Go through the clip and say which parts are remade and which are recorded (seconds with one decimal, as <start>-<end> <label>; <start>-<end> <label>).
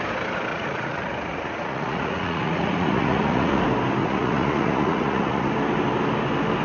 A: 0.0-0.5 recorded; 0.5-3.6 remade; 3.6-4.0 recorded; 4.0-5.5 remade; 5.5-6.6 recorded